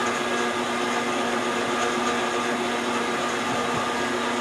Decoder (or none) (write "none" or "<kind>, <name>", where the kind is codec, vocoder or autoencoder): none